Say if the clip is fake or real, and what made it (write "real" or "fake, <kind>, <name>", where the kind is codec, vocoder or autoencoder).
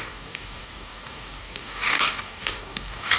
fake, codec, DAC